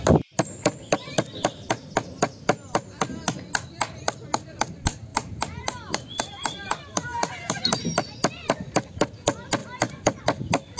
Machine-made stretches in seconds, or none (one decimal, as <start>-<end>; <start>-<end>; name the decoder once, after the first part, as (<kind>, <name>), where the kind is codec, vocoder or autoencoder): 5.1-7.6 (vocoder, BigVGAN v2); 9.6-10.2